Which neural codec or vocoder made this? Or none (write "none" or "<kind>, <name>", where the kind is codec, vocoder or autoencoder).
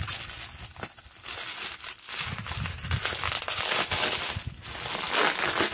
none